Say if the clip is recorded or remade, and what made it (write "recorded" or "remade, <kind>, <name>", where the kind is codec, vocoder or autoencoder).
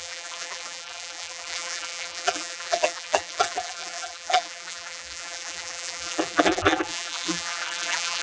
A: remade, vocoder, BigVGAN v2